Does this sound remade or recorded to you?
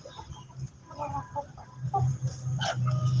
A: recorded